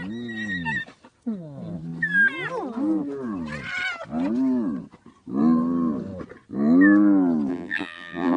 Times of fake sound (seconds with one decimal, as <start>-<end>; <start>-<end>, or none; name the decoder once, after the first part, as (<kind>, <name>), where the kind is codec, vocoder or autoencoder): 7.5-8.4 (vocoder, BigVGAN v2)